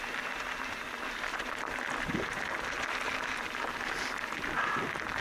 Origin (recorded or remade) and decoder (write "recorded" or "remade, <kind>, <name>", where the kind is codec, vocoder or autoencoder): recorded